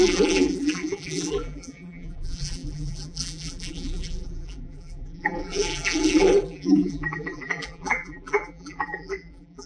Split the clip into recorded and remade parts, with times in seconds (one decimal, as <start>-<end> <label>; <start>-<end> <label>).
0.0-9.7 remade